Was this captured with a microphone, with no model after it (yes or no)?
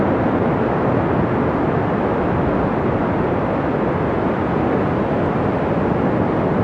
yes